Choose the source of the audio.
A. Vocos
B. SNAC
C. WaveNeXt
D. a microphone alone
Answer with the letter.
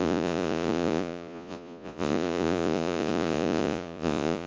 A